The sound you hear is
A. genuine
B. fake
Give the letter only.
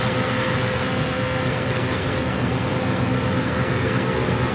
B